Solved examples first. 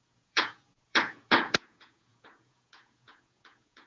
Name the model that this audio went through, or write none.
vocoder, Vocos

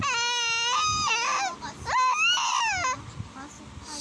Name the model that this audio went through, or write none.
none